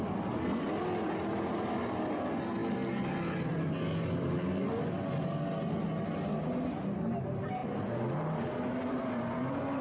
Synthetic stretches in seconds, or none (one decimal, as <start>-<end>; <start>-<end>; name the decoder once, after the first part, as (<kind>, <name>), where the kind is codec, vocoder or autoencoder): none